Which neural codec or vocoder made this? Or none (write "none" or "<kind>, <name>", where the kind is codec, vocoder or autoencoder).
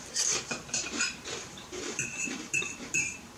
vocoder, BigVGAN v2